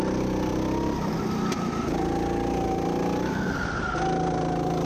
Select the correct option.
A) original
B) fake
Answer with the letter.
A